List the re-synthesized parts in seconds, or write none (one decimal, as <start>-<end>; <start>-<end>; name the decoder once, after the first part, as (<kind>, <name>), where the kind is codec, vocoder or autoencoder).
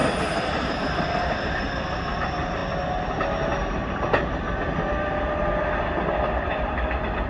none